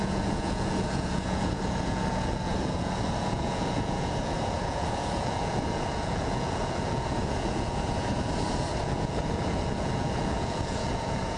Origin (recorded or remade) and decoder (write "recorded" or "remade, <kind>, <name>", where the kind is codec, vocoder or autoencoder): remade, vocoder, Vocos